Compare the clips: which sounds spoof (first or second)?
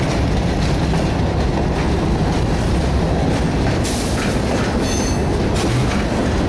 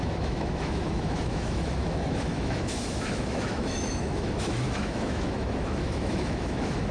second